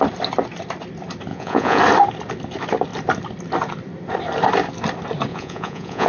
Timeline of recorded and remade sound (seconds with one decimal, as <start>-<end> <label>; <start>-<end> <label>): 0.0-1.3 recorded; 1.3-1.8 remade; 1.8-5.3 recorded; 5.3-6.1 remade

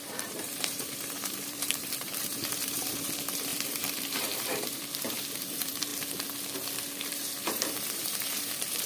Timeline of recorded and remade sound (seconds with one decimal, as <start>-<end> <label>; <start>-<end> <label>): 0.0-5.9 remade; 5.9-7.1 recorded; 7.1-8.9 remade

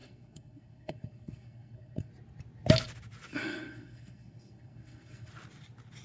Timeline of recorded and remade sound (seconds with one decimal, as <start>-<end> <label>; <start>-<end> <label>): 0.0-2.1 remade; 2.1-3.3 recorded; 3.3-5.3 remade; 5.3-6.0 recorded

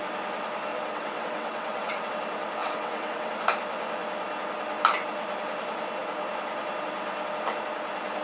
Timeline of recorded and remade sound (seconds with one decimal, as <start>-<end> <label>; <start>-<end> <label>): 0.0-0.7 recorded; 0.7-2.1 remade; 2.1-2.6 recorded; 2.6-3.3 remade; 3.3-8.2 recorded

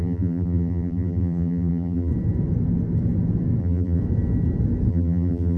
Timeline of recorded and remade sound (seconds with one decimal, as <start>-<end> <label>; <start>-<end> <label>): 0.0-2.1 remade; 2.1-3.6 recorded; 3.6-4.0 remade; 4.0-4.9 recorded; 4.9-5.6 remade

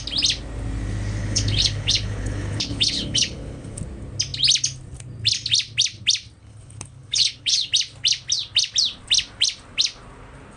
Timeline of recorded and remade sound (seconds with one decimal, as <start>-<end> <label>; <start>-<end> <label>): 0.0-1.2 recorded; 1.2-3.8 remade; 3.8-6.4 recorded; 6.4-7.7 remade; 7.7-10.6 recorded

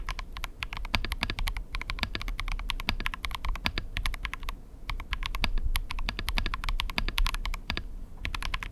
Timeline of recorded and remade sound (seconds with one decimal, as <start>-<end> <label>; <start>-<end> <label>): 0.0-2.3 remade; 2.3-3.3 recorded; 3.3-8.7 remade

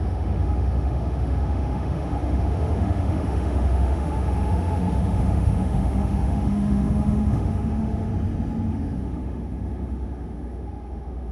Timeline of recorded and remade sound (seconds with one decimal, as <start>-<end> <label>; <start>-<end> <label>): 0.0-8.1 remade; 8.1-8.7 recorded; 8.7-11.3 remade